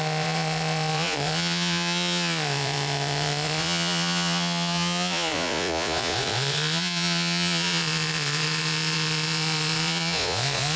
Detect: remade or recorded remade